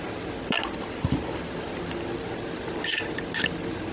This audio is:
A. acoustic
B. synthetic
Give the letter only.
A